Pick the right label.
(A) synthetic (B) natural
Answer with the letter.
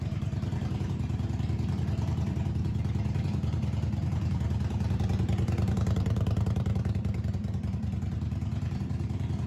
A